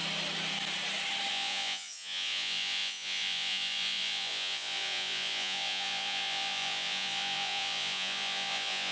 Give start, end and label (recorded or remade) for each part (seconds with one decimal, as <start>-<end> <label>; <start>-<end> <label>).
0.0-1.3 recorded; 1.3-8.9 remade